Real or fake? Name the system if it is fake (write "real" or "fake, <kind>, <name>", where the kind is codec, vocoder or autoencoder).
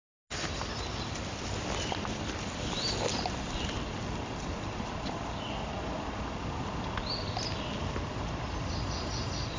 real